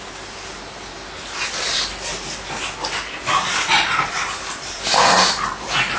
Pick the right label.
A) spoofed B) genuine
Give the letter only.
B